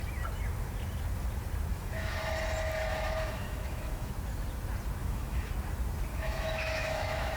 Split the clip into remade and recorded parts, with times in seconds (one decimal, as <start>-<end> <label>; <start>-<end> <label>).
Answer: 0.0-1.7 recorded; 1.7-2.2 remade; 2.2-2.9 recorded; 2.9-4.1 remade; 4.1-5.0 recorded; 5.0-5.5 remade; 5.5-6.1 recorded; 6.1-7.4 remade